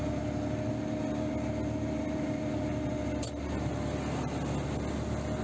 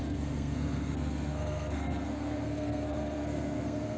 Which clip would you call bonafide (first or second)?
first